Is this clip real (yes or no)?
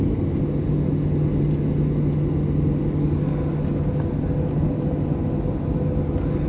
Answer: yes